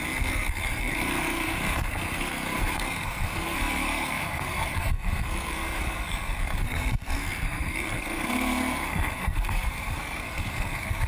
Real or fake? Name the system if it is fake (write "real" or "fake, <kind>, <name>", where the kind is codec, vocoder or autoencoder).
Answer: fake, codec, SNAC